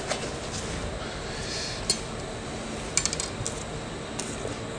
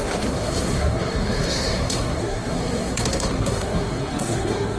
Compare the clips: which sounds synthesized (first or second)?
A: second